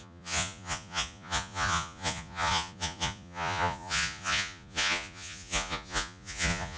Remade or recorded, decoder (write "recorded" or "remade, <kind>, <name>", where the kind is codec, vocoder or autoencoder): remade, vocoder, Vocos